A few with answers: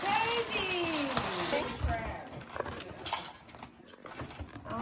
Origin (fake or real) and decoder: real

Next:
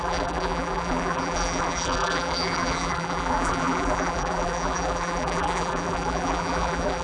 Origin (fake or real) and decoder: fake, vocoder, BigVGAN v2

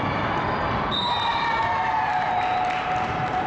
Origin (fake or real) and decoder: fake, vocoder, BigVGAN v2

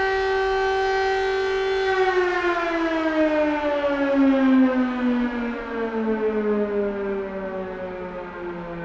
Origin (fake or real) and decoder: real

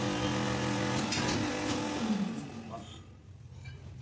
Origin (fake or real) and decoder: real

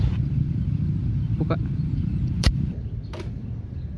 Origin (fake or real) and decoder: fake, vocoder, BigVGAN v2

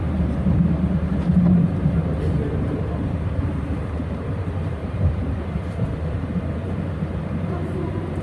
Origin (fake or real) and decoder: fake, vocoder, BigVGAN v2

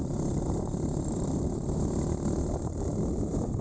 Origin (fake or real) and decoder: fake, vocoder, BigVGAN v2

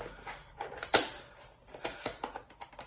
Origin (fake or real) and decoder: real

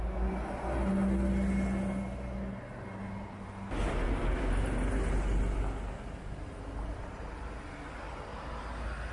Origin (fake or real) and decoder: real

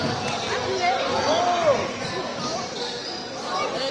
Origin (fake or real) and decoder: real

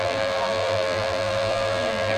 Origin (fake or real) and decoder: fake, vocoder, BigVGAN v2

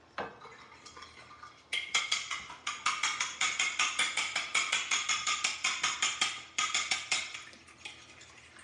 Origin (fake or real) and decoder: real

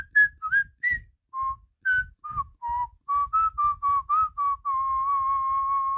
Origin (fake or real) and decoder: real